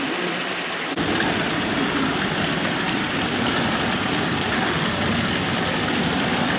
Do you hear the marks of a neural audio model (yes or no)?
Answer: yes